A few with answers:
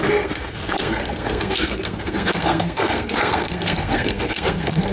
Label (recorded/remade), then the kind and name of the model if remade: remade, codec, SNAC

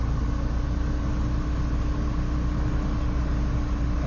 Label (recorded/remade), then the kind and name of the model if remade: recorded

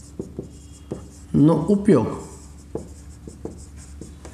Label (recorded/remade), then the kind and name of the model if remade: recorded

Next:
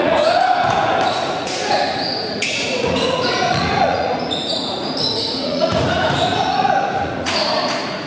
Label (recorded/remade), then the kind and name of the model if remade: remade, vocoder, Vocos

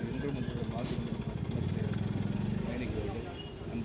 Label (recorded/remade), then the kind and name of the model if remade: recorded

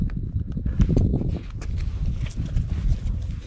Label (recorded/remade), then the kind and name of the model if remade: recorded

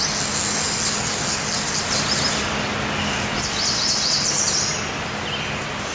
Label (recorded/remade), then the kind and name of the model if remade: recorded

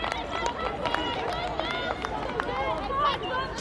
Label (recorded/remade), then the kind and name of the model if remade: recorded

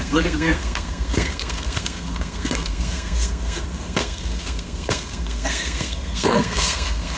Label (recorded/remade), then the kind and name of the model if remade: remade, codec, SNAC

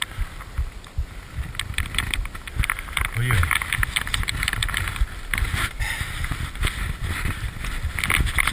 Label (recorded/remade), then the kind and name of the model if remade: recorded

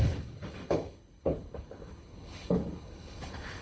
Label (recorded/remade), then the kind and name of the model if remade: remade, codec, HILCodec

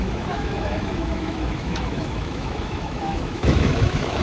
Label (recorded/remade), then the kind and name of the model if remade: remade, autoencoder, DAC-VAE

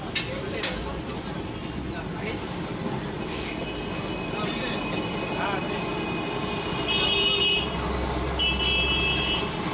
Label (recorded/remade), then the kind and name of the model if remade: recorded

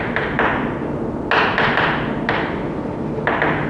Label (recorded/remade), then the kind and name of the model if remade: recorded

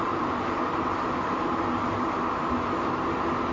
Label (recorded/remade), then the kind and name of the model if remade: recorded